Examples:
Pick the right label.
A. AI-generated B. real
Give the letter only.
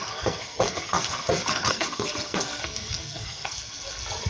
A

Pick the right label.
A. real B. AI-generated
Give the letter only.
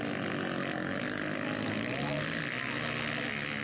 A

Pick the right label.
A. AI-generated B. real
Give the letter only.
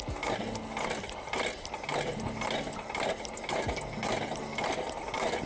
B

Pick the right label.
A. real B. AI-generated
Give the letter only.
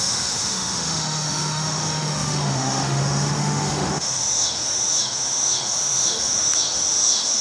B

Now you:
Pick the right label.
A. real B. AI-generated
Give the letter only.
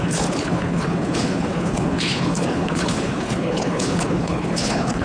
B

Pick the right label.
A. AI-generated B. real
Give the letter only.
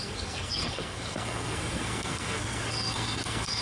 A